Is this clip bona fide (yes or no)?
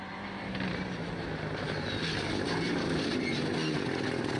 yes